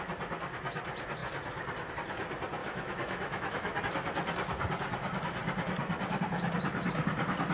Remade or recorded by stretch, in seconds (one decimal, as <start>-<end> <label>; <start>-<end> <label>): 0.0-2.6 recorded; 2.6-3.8 remade; 3.8-7.5 recorded